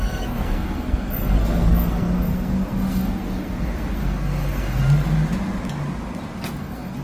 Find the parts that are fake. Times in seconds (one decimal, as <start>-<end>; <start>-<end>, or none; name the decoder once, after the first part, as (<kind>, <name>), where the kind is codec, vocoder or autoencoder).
0.0-4.8 (codec, SNAC); 6.6-7.0